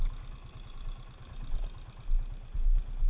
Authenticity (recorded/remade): recorded